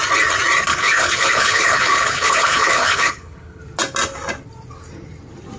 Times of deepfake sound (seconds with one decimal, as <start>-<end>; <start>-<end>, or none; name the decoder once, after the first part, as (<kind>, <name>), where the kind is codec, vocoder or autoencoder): 0.7-3.6 (codec, HILCodec)